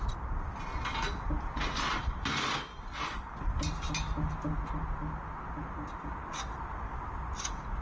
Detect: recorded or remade recorded